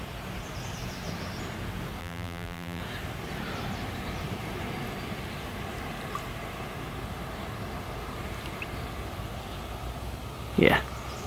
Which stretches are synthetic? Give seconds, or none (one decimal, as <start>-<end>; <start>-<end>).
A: 2.0-2.8